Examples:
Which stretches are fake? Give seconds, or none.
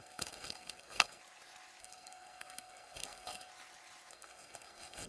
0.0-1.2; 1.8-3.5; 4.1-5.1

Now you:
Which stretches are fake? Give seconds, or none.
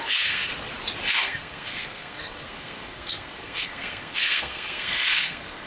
0.0-0.5; 1.1-5.7